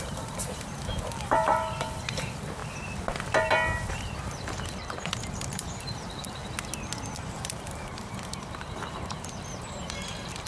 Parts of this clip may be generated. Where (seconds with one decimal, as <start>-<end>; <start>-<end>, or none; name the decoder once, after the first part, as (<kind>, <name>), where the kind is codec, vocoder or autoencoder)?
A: 0.0-2.6 (vocoder, BigVGAN v2); 3.9-6.4; 7.3-10.5